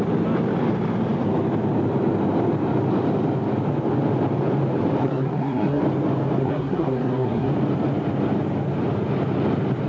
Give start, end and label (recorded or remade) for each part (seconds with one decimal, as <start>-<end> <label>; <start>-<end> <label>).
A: 0.0-5.0 recorded; 5.0-5.8 remade; 5.8-6.4 recorded; 6.4-7.5 remade; 7.5-9.9 recorded